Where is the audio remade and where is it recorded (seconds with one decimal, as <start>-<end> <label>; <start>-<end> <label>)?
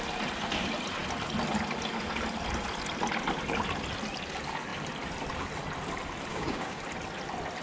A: 0.0-6.3 recorded; 6.3-6.8 remade; 6.8-7.6 recorded